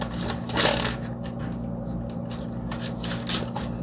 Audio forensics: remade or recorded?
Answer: recorded